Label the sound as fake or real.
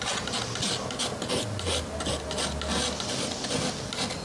real